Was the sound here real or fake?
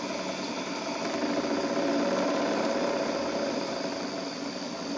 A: real